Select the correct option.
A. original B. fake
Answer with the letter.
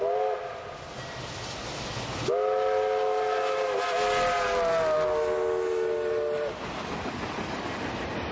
A